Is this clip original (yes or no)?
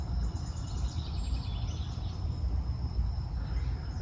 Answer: yes